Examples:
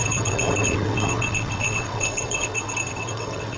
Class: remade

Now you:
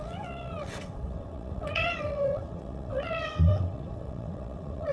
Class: remade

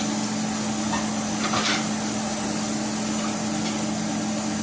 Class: recorded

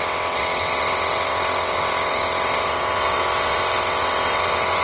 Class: remade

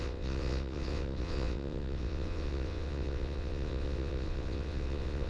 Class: remade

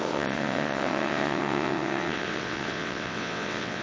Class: remade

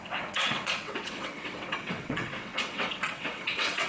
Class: remade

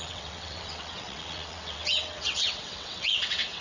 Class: remade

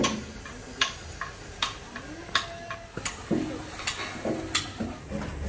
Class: recorded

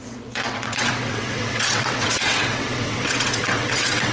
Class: remade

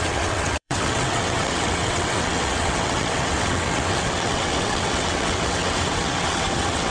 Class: remade